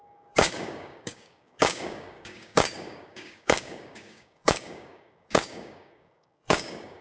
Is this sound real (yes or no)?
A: no